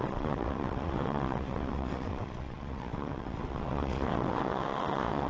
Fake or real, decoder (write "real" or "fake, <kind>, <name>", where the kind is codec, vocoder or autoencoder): fake, vocoder, WaveNeXt